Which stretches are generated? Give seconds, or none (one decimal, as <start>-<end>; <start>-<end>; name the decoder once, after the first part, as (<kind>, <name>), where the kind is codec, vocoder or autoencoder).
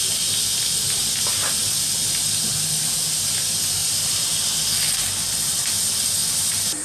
none